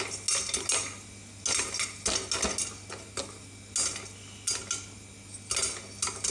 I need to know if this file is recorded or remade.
recorded